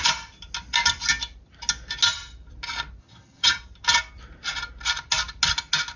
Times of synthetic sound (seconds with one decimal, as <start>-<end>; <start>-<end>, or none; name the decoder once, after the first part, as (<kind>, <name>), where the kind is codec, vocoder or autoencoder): 3.0-3.6 (vocoder, HiFi-GAN)